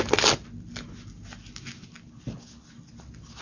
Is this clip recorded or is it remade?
recorded